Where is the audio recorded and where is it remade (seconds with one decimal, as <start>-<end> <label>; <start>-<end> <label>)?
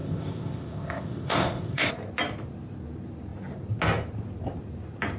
0.0-1.9 remade; 1.9-5.2 recorded